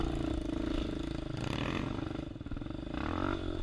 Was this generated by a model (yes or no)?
no